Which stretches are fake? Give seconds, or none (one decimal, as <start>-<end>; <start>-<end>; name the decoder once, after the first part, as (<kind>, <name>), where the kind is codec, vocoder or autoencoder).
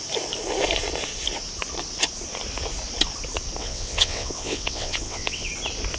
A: 3.6-5.5 (vocoder, WaveNeXt)